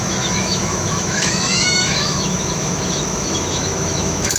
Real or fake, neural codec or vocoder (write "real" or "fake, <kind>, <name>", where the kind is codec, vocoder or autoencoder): fake, autoencoder, DAC-VAE